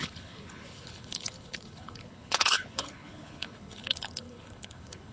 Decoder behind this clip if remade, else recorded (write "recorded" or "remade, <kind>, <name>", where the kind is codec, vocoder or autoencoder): remade, codec, HILCodec